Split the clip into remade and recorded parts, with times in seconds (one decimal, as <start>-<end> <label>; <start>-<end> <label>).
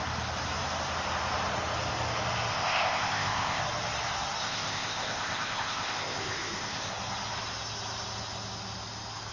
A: 0.0-2.5 recorded; 2.5-3.6 remade; 3.6-4.4 recorded; 4.4-6.9 remade; 6.9-9.3 recorded